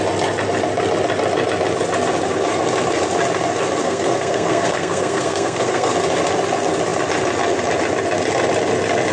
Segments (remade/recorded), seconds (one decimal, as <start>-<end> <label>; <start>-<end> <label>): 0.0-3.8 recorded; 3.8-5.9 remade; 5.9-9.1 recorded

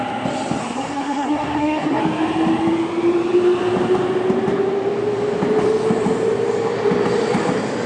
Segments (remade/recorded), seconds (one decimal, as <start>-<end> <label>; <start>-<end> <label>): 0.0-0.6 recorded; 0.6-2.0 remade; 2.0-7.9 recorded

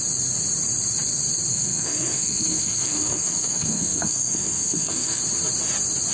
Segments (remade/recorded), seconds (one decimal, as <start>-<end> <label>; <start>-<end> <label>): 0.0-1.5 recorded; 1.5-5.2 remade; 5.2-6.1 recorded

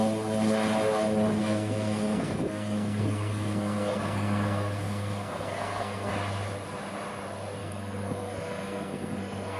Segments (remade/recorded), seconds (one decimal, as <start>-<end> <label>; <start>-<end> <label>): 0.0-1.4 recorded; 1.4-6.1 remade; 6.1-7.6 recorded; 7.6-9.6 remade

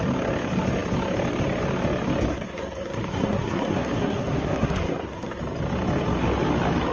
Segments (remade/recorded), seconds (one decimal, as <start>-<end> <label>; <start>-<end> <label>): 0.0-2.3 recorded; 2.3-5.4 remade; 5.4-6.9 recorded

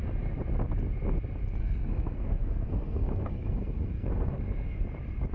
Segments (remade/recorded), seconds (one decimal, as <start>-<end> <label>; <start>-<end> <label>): 0.0-1.6 recorded; 1.6-4.8 remade; 4.8-5.3 recorded

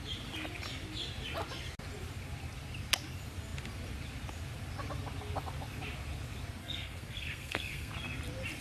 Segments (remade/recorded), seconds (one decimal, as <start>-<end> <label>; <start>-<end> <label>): 0.0-6.6 recorded; 6.6-7.9 remade; 7.9-8.6 recorded

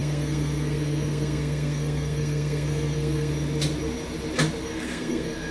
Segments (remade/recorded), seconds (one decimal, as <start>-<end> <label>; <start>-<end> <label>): 0.0-3.3 remade; 3.3-4.6 recorded; 4.6-5.5 remade